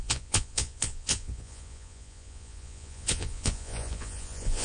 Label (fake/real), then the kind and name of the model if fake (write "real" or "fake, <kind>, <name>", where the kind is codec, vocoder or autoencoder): fake, vocoder, Vocos